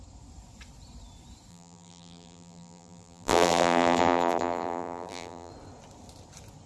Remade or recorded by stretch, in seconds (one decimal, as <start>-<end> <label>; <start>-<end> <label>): 0.0-1.5 recorded; 1.5-5.5 remade; 5.5-6.7 recorded